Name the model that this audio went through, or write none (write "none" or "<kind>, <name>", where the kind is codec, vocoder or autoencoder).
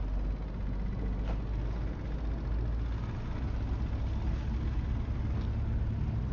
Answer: none